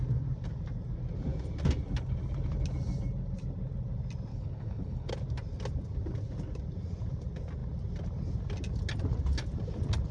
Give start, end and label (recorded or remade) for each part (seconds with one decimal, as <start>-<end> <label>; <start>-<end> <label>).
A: 0.0-4.3 recorded; 4.3-5.1 remade; 5.1-10.1 recorded